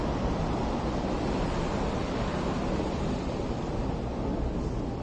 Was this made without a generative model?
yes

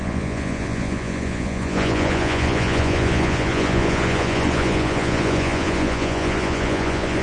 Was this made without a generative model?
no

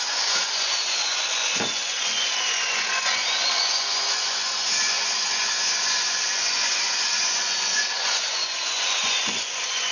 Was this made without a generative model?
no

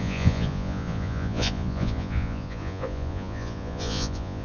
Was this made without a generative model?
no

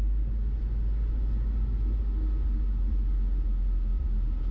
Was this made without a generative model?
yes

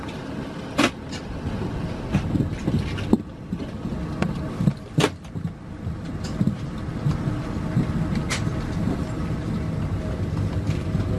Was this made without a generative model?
yes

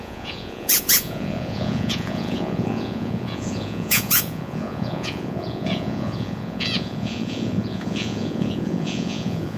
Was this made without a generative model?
no